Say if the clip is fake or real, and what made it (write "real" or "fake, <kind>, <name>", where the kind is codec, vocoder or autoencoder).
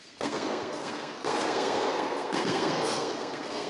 fake, codec, SNAC